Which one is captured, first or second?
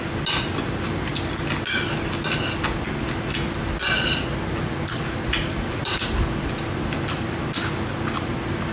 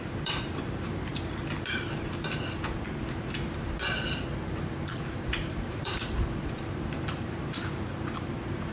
first